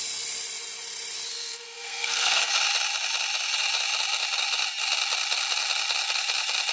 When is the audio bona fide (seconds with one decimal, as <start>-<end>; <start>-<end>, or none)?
0.0-1.3; 2.5-6.7